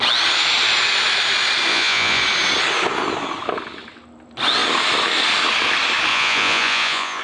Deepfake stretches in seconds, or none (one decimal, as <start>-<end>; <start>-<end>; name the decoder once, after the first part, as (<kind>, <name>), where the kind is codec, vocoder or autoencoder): 1.7-2.2 (vocoder, Vocos); 6.1-7.2